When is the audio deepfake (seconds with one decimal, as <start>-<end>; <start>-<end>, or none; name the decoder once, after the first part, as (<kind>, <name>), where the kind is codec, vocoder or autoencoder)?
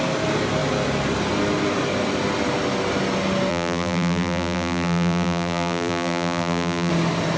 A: 3.5-6.9 (vocoder, BigVGAN v2)